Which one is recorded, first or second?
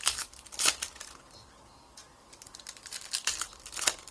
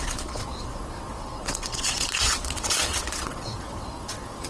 first